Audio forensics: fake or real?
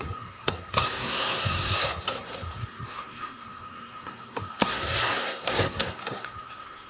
fake